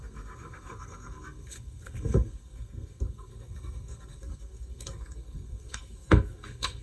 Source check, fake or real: fake